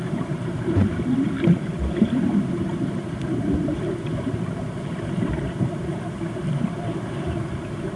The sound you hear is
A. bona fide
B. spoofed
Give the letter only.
B